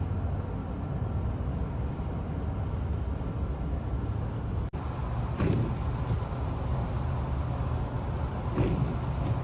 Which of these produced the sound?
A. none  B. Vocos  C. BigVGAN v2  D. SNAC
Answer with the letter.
A